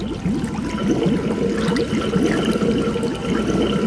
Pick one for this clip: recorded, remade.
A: recorded